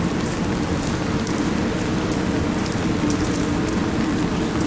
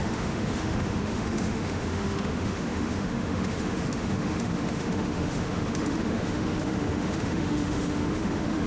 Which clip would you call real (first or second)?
first